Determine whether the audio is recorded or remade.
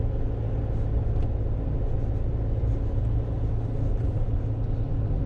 recorded